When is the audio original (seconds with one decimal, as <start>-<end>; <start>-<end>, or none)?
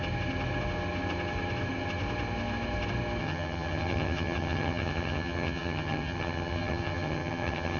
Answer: 0.0-3.2